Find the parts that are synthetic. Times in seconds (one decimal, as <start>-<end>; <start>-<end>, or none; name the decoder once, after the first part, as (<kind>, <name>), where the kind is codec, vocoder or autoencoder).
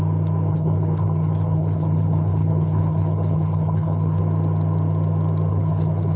0.5-4.2 (codec, HILCodec); 5.5-6.2